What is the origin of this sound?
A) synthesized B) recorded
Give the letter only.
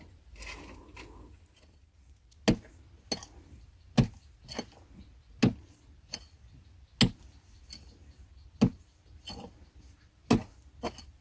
B